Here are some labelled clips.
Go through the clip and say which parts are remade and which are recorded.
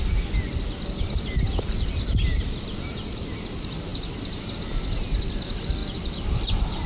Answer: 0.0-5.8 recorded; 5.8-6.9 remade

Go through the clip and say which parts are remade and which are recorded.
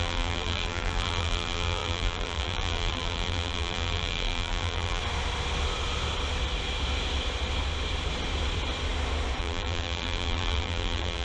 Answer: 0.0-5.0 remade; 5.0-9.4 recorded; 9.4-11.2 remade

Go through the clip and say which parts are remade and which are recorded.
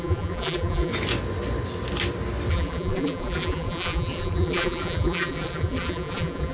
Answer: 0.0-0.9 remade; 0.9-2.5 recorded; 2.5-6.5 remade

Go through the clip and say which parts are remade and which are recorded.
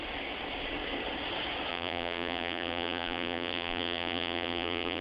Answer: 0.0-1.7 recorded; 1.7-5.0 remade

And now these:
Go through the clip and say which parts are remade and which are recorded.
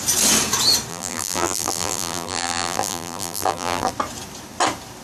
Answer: 0.0-0.9 recorded; 0.9-3.9 remade; 3.9-5.0 recorded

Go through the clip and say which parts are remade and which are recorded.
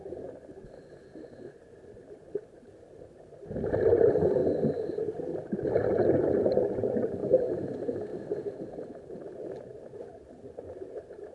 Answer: 0.0-4.4 remade; 4.4-4.9 recorded; 4.9-11.3 remade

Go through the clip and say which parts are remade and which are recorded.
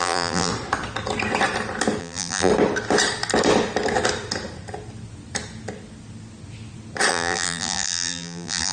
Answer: 0.0-0.5 remade; 0.5-2.0 recorded; 2.0-2.5 remade; 2.5-7.1 recorded; 7.1-8.7 remade